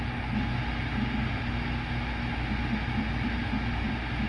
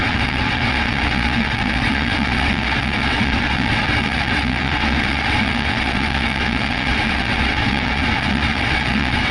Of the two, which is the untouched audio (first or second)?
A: first